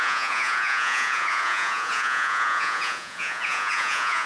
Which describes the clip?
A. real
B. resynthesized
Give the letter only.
B